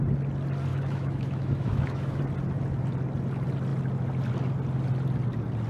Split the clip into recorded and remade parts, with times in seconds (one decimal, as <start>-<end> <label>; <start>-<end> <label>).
0.0-0.7 recorded; 0.7-2.2 remade; 2.2-5.7 recorded